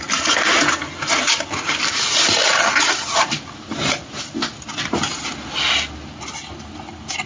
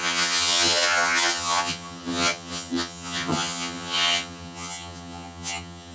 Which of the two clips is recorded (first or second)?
first